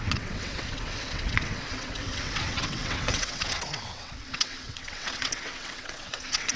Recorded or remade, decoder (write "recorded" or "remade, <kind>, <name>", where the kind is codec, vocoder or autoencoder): remade, vocoder, WaveNeXt